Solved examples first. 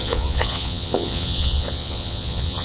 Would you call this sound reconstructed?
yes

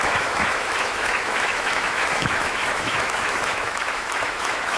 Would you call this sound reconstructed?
yes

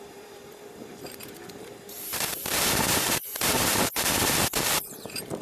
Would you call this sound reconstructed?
yes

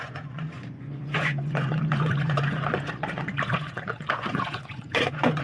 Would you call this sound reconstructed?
yes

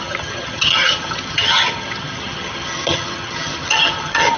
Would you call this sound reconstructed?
yes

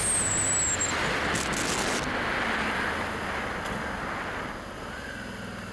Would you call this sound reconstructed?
no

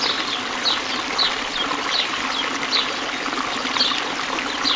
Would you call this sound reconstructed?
no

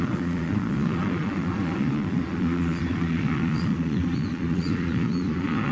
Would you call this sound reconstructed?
yes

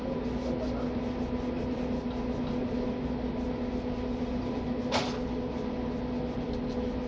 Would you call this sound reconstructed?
no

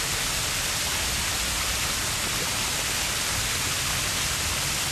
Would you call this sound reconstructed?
no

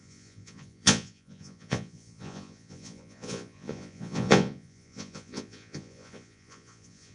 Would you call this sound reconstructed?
yes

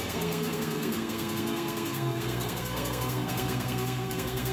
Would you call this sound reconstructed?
yes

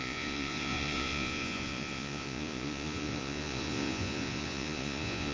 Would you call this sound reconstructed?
yes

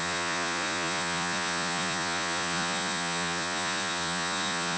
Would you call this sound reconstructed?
yes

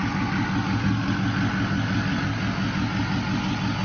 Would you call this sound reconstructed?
no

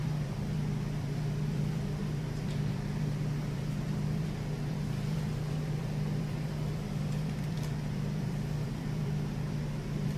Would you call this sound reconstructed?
yes